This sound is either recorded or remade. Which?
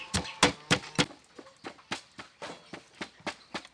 recorded